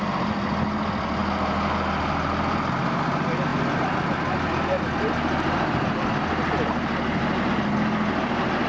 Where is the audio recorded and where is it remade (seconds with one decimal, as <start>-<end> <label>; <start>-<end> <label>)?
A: 0.0-8.7 recorded